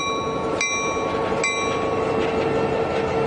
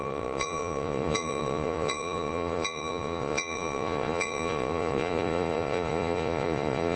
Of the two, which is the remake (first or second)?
second